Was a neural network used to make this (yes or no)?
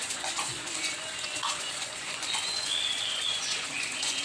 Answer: yes